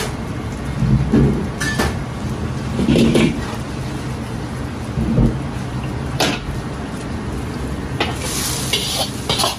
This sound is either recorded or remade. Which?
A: recorded